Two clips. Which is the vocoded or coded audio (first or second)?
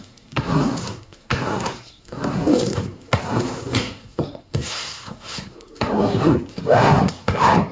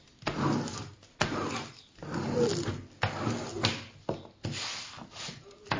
first